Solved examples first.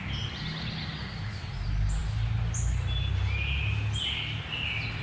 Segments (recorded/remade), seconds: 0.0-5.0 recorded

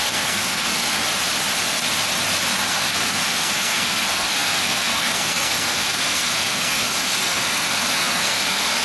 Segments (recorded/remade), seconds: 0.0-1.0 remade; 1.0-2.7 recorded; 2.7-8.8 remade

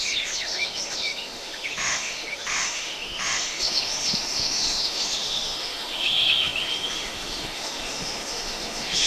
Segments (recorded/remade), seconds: 0.0-9.1 remade